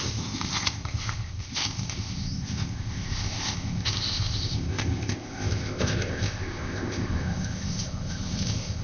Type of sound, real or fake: fake